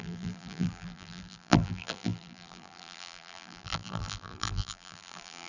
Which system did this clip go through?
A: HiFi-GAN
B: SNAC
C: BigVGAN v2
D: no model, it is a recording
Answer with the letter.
C